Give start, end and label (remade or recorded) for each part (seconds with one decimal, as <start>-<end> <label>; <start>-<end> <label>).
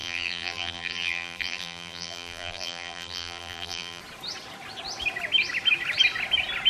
0.0-4.0 remade; 4.0-6.7 recorded